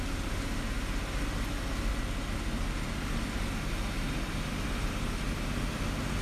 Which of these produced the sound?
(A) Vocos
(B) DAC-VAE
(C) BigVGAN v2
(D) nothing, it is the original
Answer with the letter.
D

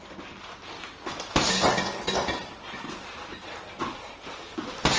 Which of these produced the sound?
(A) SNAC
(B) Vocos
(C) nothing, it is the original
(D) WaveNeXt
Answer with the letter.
C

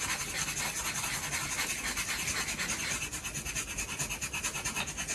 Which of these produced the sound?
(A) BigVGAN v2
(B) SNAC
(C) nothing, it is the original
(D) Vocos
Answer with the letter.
C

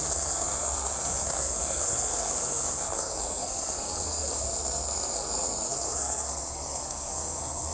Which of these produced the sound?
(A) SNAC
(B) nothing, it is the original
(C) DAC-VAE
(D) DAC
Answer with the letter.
A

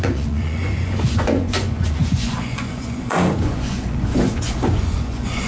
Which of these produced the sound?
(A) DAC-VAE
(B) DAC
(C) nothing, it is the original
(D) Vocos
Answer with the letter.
D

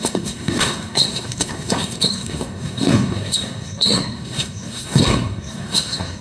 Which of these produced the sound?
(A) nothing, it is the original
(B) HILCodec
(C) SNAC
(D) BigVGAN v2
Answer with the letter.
C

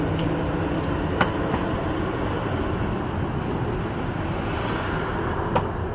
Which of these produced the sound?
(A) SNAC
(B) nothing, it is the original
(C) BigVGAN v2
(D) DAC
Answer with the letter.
B